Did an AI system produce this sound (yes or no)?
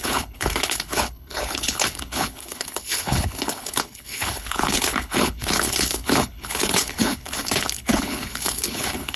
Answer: yes